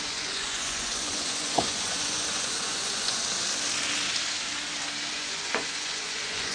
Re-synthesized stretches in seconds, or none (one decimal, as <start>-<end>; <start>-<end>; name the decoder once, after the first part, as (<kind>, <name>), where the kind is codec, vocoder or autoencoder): 0.0-3.2 (vocoder, Vocos); 5.1-6.5